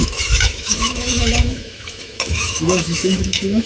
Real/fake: fake